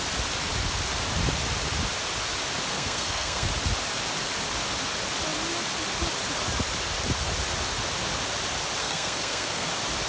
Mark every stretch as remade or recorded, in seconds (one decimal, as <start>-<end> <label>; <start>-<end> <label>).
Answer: 0.0-2.7 recorded; 2.7-3.5 remade; 3.5-8.8 recorded; 8.8-9.7 remade; 9.7-10.1 recorded